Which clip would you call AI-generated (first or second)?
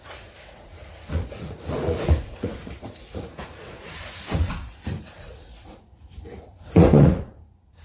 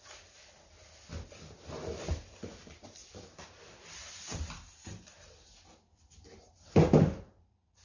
first